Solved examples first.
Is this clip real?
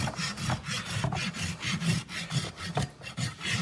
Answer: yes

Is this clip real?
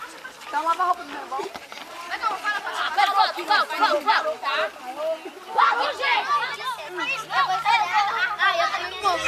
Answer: yes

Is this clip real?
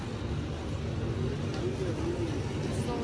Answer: yes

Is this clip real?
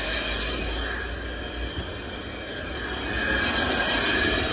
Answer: yes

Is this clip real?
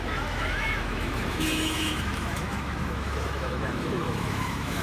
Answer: no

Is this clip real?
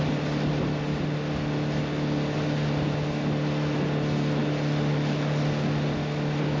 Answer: yes